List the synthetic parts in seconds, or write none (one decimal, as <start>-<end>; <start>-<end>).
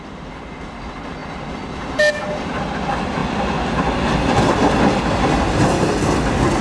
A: 1.2-1.9